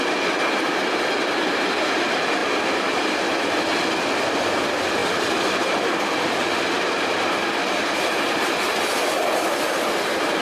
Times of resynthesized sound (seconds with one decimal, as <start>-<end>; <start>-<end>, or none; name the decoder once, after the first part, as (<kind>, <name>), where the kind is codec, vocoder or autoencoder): none